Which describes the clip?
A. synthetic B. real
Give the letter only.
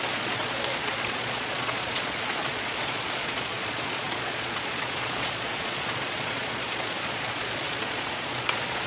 A